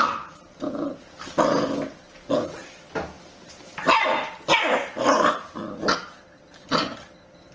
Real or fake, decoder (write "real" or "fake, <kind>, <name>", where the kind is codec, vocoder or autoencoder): real